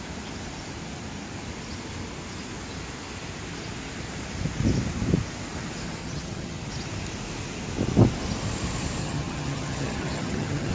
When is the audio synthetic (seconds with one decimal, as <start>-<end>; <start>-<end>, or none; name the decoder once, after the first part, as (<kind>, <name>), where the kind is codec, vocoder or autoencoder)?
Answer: 6.0-6.7 (vocoder, HiFi-GAN); 9.0-10.7